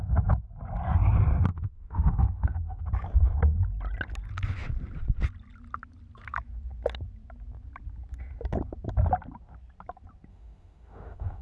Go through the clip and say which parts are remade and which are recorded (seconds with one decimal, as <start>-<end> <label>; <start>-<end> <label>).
0.0-1.5 recorded; 1.5-2.8 remade; 2.8-10.3 recorded; 10.3-11.4 remade